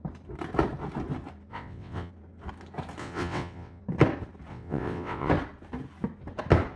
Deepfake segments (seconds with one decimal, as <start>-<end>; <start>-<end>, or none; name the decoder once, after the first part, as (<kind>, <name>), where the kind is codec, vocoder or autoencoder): 1.5-2.1 (vocoder, WaveNeXt); 3.0-3.8; 4.5-5.3